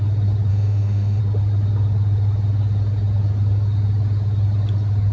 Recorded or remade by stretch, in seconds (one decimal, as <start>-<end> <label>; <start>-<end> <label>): 0.0-0.5 recorded; 0.5-1.2 remade; 1.2-5.1 recorded